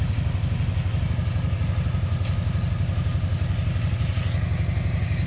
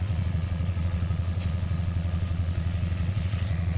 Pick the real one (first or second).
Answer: first